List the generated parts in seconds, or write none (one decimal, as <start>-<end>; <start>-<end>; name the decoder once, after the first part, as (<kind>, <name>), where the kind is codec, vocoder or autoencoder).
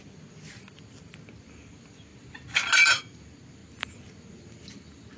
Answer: none